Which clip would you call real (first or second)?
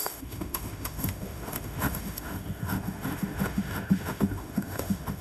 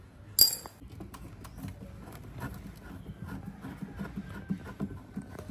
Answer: second